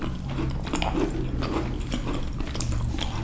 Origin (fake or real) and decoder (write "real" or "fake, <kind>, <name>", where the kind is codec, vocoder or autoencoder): real